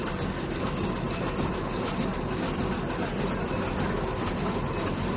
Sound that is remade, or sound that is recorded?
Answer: recorded